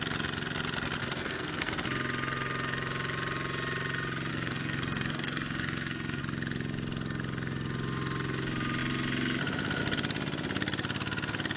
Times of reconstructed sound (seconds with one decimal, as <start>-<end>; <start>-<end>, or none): 1.0-1.7; 4.3-6.2